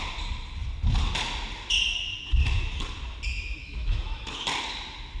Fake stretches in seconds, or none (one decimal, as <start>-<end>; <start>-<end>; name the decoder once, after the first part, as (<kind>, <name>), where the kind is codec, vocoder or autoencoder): 3.6-4.2 (autoencoder, DAC-VAE)